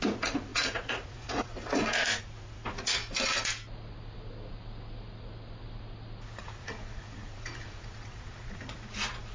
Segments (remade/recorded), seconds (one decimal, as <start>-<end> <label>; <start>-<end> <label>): 0.0-3.0 remade; 3.0-6.4 recorded; 6.4-9.3 remade